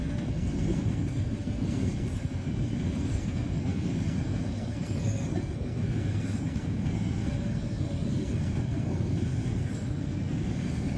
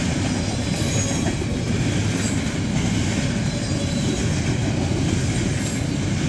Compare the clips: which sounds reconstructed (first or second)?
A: first